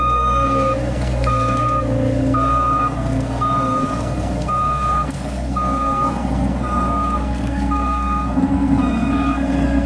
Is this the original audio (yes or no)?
no